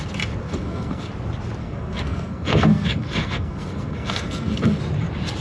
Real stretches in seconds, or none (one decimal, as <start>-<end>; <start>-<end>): 0.0-0.4; 1.1-1.6; 4.8-5.4